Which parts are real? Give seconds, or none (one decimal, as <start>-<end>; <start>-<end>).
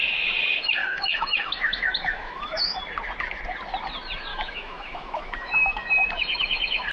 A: 0.0-0.8; 2.8-4.3; 5.9-6.9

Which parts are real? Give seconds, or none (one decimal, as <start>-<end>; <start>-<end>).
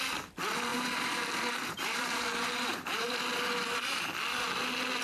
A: 0.0-0.7; 3.2-5.0